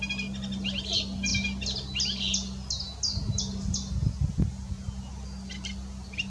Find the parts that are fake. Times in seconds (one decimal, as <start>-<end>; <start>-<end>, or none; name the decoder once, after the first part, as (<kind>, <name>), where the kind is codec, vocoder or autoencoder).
none